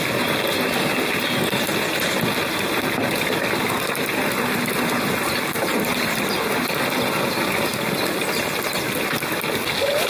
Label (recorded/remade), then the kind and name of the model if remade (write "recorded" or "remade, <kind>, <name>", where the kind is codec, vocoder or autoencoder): recorded